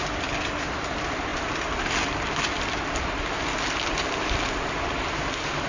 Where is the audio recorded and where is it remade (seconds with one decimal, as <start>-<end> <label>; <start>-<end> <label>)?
0.0-5.7 recorded